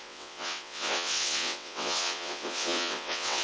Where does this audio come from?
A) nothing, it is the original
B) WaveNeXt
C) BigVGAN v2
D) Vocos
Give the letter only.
B